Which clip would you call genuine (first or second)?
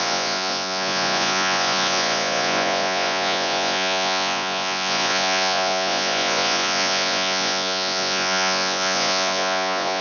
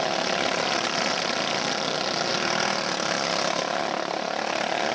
second